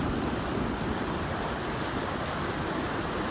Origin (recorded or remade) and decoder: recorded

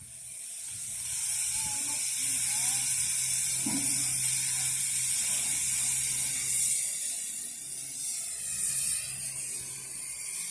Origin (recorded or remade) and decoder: recorded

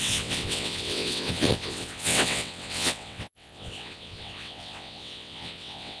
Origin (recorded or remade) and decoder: remade, vocoder, WaveNeXt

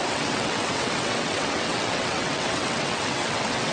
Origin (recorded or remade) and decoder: remade, vocoder, WaveNeXt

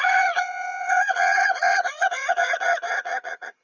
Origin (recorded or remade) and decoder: remade, vocoder, WaveNeXt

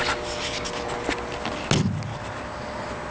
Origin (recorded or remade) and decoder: recorded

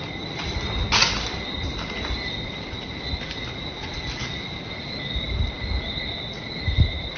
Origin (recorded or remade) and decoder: recorded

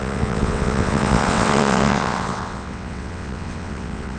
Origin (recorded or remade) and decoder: remade, vocoder, WaveNeXt